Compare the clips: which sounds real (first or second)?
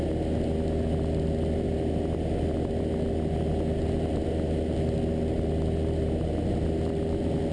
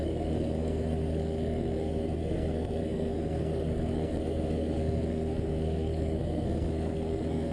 first